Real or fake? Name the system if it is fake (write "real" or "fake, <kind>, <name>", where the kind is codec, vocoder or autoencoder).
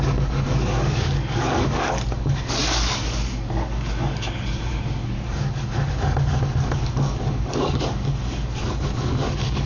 fake, codec, DAC